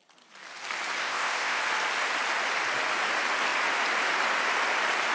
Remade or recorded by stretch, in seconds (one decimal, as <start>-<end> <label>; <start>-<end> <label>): 0.0-1.0 recorded; 1.0-1.6 remade; 1.6-5.1 recorded